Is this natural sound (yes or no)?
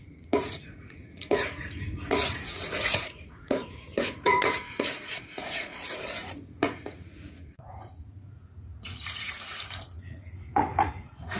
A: no